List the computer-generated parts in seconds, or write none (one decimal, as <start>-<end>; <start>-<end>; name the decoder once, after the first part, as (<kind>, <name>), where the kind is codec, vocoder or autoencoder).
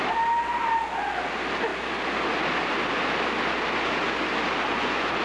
4.7-5.2 (vocoder, Vocos)